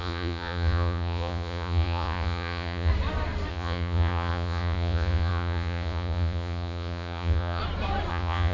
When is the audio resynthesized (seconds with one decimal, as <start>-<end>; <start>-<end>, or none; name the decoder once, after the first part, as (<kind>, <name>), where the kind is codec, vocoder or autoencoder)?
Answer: 0.0-2.9 (vocoder, Vocos); 3.5-7.6; 8.1-8.5